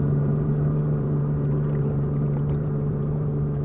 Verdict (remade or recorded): remade